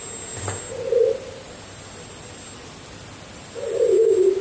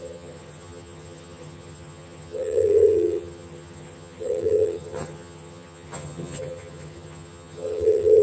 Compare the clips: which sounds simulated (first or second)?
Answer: second